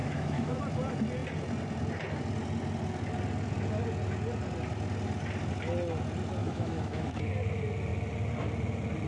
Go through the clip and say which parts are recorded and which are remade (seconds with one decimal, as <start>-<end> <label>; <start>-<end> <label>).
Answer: 0.0-0.6 remade; 0.6-6.4 recorded; 6.4-7.3 remade; 7.3-9.1 recorded